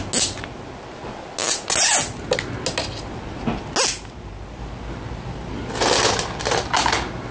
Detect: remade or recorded recorded